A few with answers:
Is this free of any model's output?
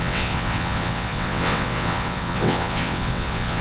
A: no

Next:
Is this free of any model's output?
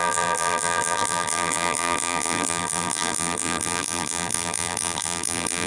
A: no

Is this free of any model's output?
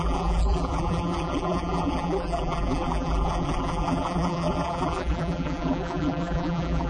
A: no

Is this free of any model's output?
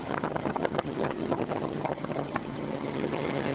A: no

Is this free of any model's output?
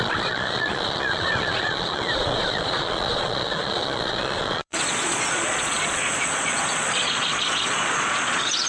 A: no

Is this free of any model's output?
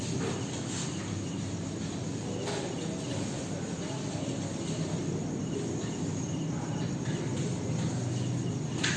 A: yes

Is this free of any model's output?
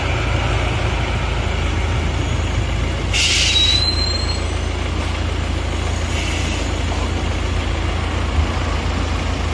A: yes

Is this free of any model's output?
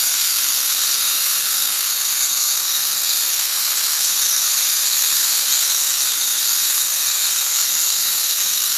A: no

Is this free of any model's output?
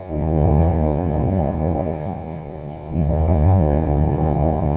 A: no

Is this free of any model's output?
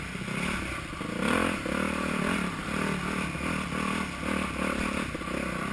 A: yes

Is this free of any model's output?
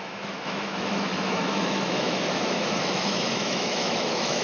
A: no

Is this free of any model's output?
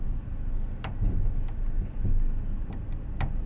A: yes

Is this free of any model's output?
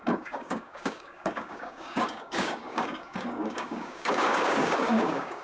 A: no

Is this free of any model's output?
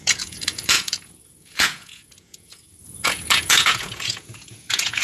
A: no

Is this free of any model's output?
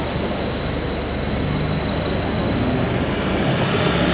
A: yes